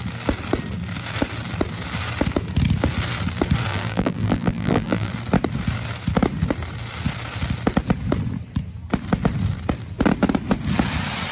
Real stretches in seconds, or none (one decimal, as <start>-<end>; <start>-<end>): 0.0-3.7; 5.1-11.3